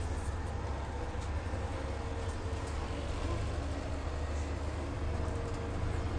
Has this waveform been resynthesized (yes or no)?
no